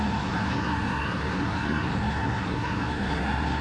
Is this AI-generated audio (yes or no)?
yes